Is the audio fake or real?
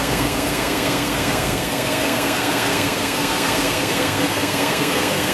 fake